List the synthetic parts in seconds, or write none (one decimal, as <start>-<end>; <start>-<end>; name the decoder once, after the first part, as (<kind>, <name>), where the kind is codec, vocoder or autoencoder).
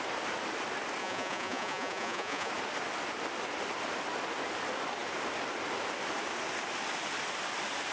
1.0-2.5 (vocoder, Vocos)